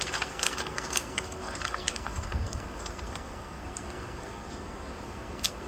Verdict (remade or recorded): remade